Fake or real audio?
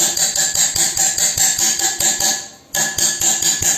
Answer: real